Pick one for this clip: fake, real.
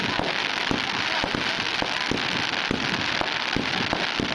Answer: real